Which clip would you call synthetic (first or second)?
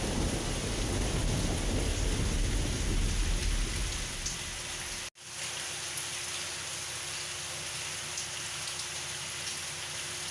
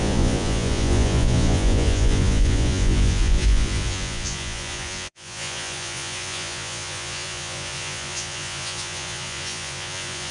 second